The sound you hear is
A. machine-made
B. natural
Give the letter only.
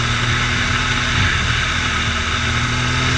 B